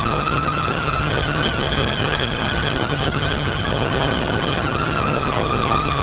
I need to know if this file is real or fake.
fake